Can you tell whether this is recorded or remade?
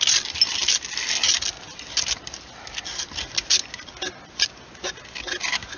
recorded